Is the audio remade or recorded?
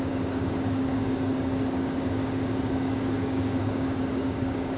remade